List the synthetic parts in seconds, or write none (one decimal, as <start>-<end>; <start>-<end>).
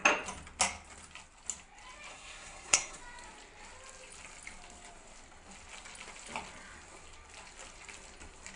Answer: 2.1-3.0